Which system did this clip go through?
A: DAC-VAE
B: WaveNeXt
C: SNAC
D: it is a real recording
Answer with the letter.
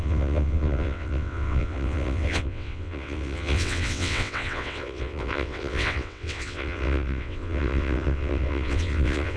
B